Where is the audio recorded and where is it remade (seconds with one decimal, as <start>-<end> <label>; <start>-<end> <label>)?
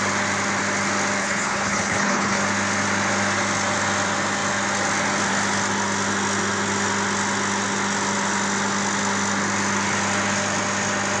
0.0-1.2 recorded; 1.2-2.4 remade; 2.4-11.2 recorded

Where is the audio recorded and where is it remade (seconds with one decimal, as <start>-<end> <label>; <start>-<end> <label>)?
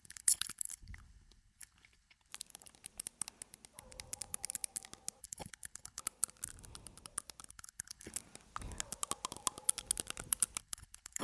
0.0-2.3 remade; 2.3-5.2 recorded; 5.2-6.0 remade; 6.0-7.5 recorded; 7.5-8.1 remade; 8.1-10.6 recorded; 10.6-11.2 remade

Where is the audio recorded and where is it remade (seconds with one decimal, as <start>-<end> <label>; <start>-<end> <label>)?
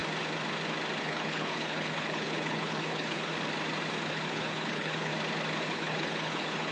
0.0-1.0 recorded; 1.0-3.3 remade; 3.3-4.1 recorded; 4.1-5.1 remade; 5.1-5.6 recorded; 5.6-6.7 remade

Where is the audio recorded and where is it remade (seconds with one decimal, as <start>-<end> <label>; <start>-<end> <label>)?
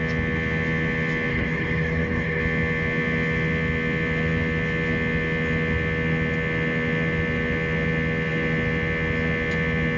0.0-1.3 recorded; 1.3-2.4 remade; 2.4-10.0 recorded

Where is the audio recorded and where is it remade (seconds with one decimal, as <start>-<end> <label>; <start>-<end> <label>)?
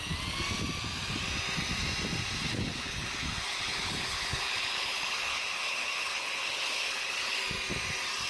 0.0-2.4 recorded; 2.4-7.4 remade; 7.4-8.3 recorded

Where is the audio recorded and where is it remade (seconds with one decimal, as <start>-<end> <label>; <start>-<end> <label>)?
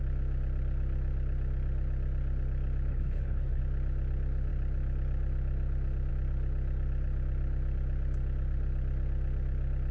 0.0-2.9 recorded; 2.9-3.6 remade; 3.6-9.9 recorded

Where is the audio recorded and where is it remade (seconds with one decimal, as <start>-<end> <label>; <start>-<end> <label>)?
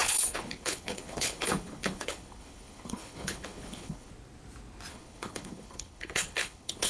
0.0-4.1 remade; 4.1-4.9 recorded; 4.9-6.9 remade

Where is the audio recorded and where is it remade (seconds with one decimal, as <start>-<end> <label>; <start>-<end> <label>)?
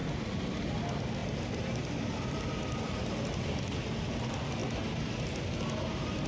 0.0-6.3 recorded